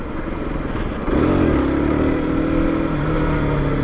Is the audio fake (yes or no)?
no